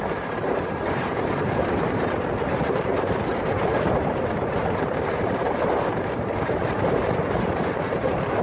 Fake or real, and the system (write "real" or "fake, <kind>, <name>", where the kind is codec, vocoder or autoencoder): fake, vocoder, BigVGAN v2